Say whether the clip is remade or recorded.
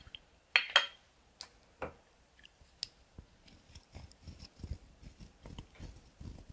recorded